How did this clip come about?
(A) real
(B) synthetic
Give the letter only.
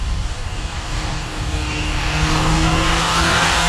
B